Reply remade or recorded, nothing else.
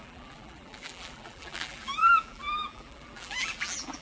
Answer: remade